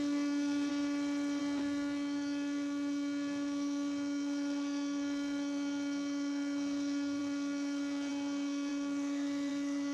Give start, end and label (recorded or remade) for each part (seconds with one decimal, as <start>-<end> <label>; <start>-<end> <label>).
0.0-0.7 remade; 0.7-1.4 recorded; 1.4-9.9 remade